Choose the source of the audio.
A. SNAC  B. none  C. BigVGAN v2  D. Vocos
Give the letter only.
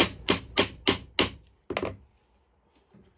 B